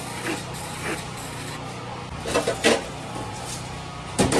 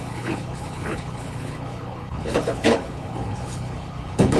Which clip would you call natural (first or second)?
first